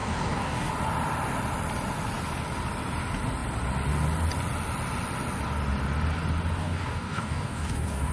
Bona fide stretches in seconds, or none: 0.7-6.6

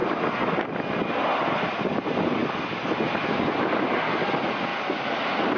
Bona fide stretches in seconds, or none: 0.0-5.6

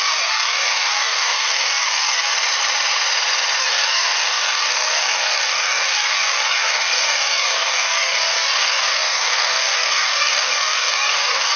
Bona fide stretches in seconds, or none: 2.3-3.6